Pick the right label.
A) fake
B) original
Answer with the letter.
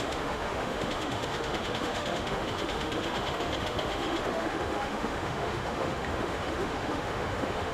A